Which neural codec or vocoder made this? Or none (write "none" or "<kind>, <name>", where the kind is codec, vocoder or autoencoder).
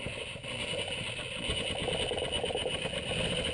none